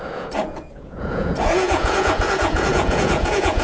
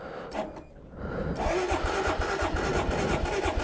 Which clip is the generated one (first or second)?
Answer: first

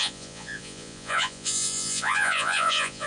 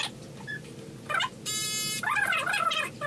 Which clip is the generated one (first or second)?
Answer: first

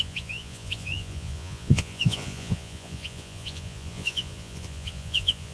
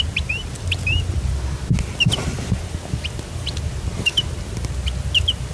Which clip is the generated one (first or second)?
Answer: first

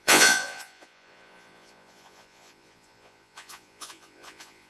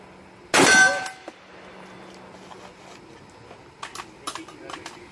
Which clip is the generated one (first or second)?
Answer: first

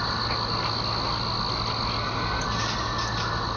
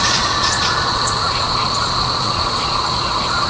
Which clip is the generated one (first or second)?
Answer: second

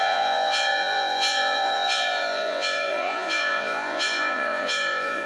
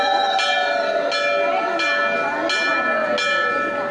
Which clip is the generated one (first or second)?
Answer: first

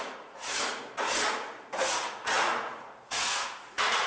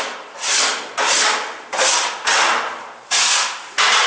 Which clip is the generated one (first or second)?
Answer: first